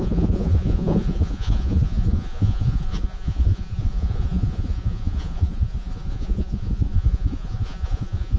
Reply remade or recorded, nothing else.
remade